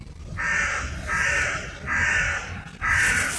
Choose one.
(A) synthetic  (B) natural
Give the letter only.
B